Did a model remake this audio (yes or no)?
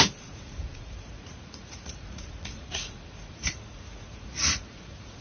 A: yes